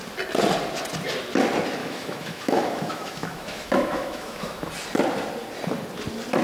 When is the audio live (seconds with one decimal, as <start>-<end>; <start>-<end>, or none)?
0.0-1.8; 4.7-6.4